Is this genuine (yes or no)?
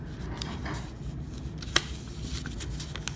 yes